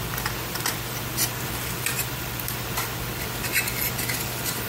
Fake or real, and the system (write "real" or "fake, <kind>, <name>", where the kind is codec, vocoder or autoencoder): real